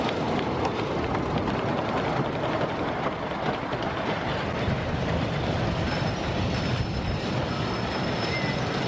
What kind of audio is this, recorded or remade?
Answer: recorded